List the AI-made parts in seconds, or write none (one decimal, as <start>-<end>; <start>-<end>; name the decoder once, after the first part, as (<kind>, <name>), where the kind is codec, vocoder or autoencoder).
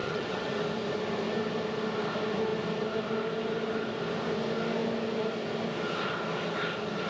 0.0-0.5 (vocoder, WaveNeXt)